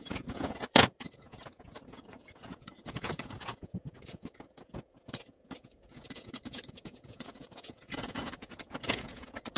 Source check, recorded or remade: remade